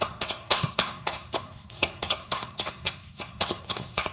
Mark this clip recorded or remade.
remade